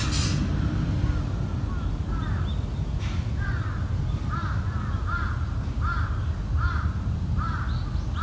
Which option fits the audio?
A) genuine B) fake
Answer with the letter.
A